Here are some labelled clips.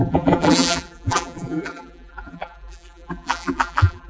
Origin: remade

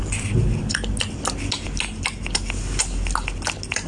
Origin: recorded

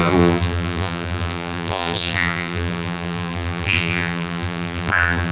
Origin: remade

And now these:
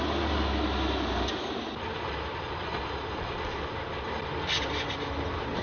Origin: recorded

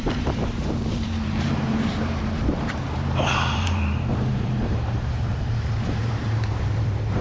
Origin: remade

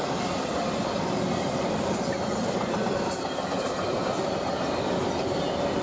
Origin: recorded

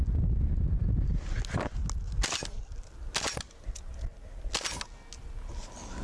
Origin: recorded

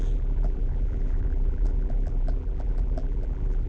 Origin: remade